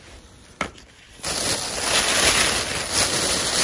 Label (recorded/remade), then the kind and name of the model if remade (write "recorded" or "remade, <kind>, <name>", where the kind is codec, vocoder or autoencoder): recorded